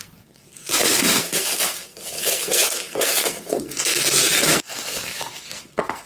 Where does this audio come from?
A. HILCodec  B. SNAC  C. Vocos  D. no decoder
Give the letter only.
B